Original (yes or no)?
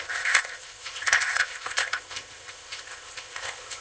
no